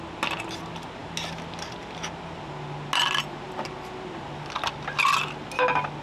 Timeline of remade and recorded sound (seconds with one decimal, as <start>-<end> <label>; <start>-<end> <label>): 0.0-6.0 recorded